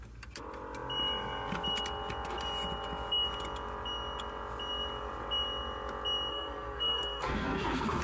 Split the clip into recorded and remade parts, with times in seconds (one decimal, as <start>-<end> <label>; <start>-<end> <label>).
0.0-6.3 recorded; 6.3-8.0 remade